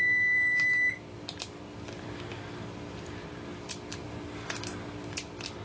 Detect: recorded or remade remade